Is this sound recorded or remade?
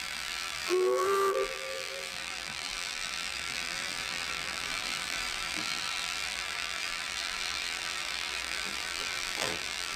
remade